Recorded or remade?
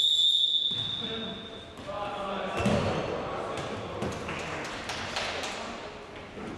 recorded